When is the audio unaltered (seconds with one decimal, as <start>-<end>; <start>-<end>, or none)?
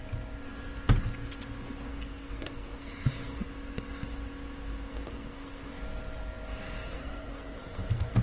0.0-1.9; 3.5-4.9; 5.7-6.9